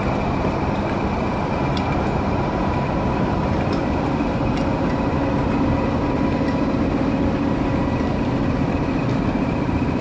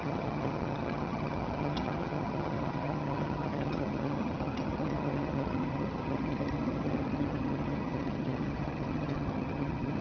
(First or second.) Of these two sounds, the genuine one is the first